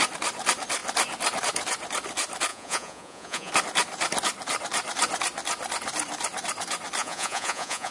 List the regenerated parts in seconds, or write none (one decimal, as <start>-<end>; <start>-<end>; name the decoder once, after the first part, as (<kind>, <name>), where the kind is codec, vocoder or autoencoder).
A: 2.5-3.5 (vocoder, Vocos); 7.0-7.9

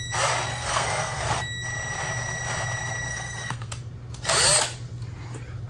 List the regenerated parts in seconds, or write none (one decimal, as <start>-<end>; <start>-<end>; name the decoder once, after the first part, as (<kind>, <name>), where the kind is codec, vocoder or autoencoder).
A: 0.5-1.4 (codec, SNAC); 3.1-3.7